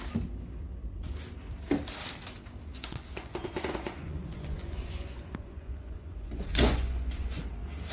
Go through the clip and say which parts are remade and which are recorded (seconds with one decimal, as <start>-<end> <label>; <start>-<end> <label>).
0.0-2.7 recorded; 2.7-7.4 remade; 7.4-7.9 recorded